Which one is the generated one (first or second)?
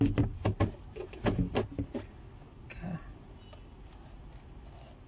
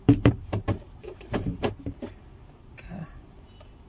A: second